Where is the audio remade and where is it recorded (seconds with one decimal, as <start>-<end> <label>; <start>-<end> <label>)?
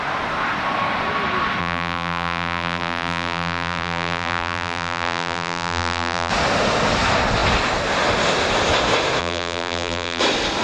0.0-1.6 recorded; 1.6-6.3 remade; 6.3-9.2 recorded; 9.2-10.2 remade; 10.2-10.6 recorded